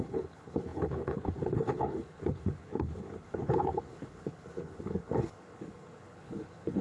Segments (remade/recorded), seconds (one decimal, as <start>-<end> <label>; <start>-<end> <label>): 0.0-6.8 remade